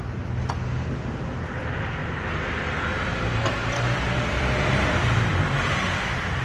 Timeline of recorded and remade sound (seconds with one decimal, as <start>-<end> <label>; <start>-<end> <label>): 0.0-2.0 remade; 2.0-3.3 recorded; 3.3-6.4 remade